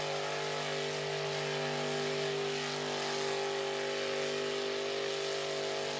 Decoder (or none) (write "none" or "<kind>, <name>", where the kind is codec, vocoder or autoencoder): none